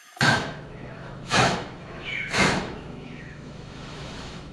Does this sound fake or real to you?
fake